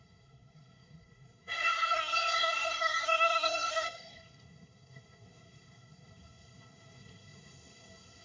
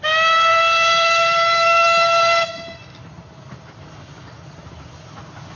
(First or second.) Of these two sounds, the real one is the second